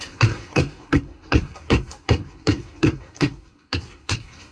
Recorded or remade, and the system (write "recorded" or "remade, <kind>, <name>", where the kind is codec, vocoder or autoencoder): remade, codec, SNAC